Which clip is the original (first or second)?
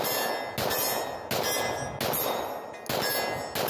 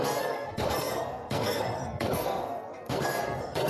first